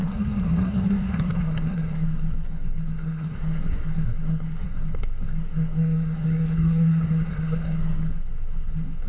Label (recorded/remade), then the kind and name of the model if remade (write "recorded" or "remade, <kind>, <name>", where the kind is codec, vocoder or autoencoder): remade, codec, SNAC